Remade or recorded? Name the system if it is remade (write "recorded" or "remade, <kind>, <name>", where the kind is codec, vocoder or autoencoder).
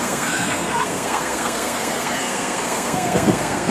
remade, codec, SNAC